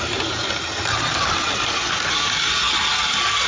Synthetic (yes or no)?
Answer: no